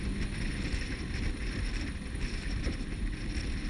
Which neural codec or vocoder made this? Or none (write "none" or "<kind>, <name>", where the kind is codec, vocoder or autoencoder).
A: vocoder, BigVGAN v2